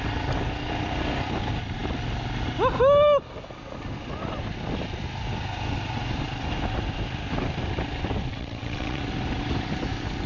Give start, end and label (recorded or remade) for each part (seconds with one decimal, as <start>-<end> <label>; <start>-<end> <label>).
0.0-8.3 recorded; 8.3-9.0 remade; 9.0-10.3 recorded